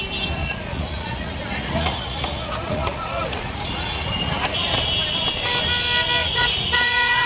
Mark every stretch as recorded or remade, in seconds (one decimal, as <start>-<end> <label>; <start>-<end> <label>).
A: 0.0-0.4 recorded; 0.4-4.8 remade; 4.8-6.2 recorded; 6.2-7.3 remade

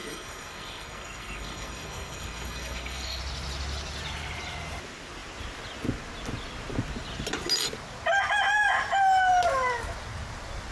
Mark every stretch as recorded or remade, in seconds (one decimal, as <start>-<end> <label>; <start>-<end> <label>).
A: 0.0-3.2 remade; 3.2-10.7 recorded

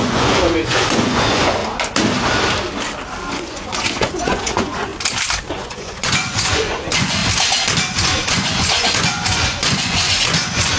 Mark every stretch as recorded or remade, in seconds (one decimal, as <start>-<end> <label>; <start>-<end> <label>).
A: 0.0-1.6 remade; 1.6-3.3 recorded; 3.3-4.9 remade; 4.9-5.5 recorded; 5.5-7.2 remade; 7.2-7.9 recorded; 7.9-10.8 remade

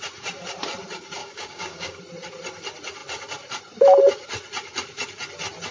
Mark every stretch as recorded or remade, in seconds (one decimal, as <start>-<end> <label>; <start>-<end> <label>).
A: 0.0-1.2 recorded; 1.2-2.0 remade; 2.0-5.7 recorded